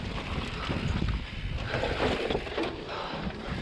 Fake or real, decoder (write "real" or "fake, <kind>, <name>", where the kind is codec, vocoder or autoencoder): real